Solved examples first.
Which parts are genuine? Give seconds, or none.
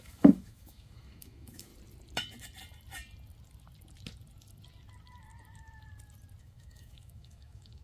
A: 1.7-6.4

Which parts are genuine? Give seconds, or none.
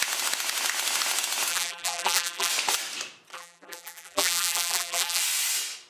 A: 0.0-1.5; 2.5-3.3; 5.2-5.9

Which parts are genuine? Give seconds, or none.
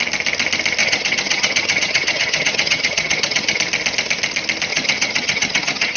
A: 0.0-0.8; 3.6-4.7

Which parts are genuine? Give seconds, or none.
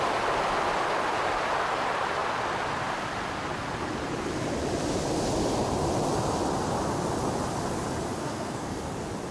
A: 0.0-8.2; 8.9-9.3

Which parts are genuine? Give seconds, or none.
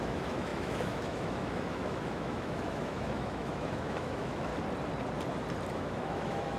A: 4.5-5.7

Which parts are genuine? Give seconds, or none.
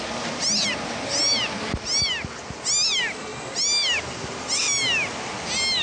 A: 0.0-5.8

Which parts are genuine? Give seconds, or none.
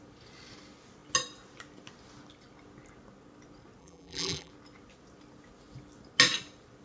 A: 0.0-3.8; 4.5-6.8